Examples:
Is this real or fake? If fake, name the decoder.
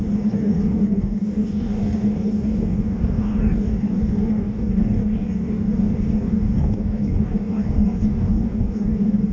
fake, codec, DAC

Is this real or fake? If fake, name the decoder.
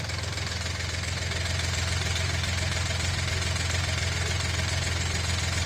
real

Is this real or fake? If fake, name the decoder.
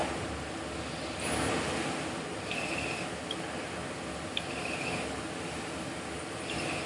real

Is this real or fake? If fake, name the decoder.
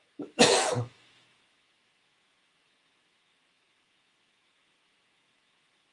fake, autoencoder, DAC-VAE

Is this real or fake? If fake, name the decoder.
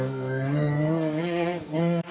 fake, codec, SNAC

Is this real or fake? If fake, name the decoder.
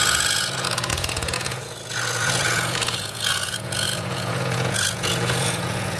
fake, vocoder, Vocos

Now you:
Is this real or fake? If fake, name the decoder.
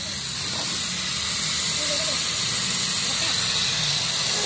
real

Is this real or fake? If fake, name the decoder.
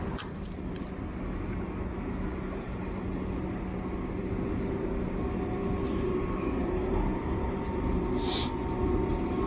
real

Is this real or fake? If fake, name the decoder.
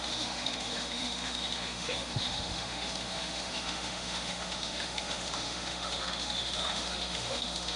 fake, autoencoder, DAC-VAE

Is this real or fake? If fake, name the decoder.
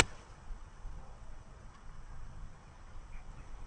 fake, vocoder, WaveNeXt